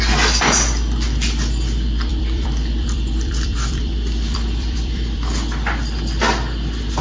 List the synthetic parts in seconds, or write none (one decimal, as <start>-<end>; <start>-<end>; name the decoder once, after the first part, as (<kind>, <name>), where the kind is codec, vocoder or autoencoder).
2.1-5.3 (vocoder, BigVGAN v2)